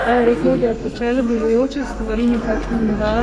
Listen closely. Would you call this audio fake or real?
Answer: fake